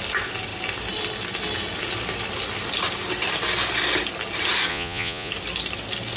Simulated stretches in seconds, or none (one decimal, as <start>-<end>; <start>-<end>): 4.7-5.3